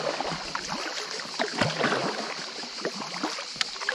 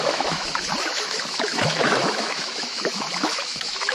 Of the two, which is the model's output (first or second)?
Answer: second